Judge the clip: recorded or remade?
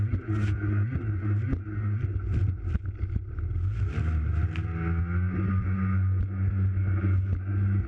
recorded